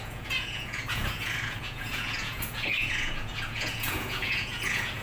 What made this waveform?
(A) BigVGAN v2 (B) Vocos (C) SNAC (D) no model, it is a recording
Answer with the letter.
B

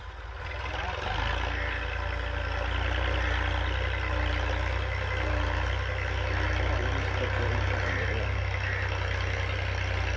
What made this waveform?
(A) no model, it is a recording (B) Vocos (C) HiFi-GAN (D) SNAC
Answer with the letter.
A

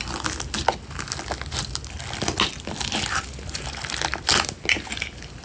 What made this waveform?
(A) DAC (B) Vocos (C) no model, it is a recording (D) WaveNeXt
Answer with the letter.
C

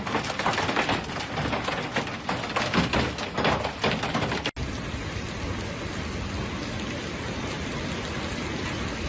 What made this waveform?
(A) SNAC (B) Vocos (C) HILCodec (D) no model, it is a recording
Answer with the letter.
D